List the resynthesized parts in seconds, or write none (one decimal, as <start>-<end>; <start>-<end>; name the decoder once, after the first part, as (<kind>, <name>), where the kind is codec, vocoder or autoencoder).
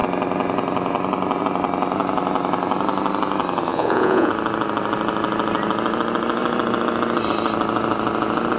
3.7-4.3 (vocoder, Vocos)